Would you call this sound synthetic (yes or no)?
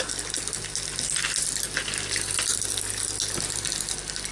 no